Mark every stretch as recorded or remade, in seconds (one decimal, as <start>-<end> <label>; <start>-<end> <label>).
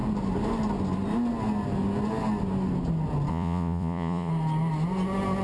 0.0-3.3 recorded; 3.3-4.3 remade; 4.3-5.4 recorded